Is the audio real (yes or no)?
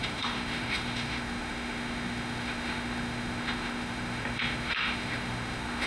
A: no